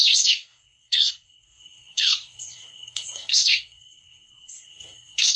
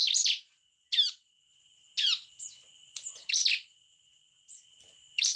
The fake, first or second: first